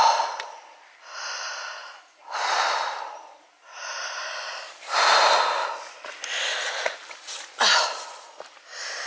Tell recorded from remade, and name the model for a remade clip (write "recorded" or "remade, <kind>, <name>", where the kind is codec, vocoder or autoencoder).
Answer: recorded